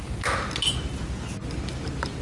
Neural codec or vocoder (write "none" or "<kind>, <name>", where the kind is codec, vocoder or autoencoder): none